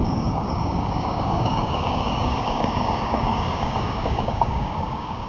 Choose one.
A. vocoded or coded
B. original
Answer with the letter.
A